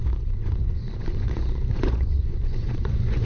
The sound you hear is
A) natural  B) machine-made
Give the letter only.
B